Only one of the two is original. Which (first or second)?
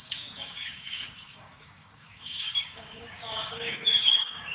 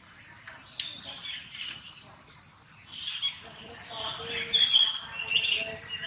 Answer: second